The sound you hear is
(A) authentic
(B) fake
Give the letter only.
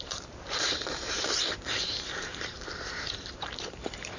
B